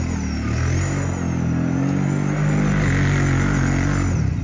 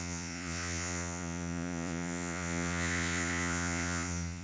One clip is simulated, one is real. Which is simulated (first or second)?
second